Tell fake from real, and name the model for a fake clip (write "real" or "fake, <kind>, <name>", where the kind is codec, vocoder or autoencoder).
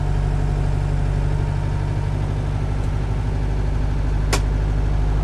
real